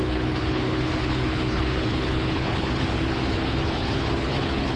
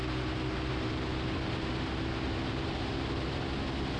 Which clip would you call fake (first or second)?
first